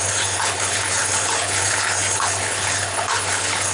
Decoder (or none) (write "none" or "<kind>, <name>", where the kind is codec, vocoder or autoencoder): codec, HILCodec